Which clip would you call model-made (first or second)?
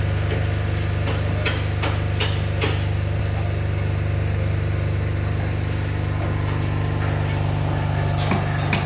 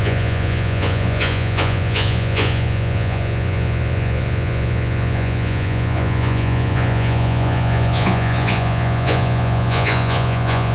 second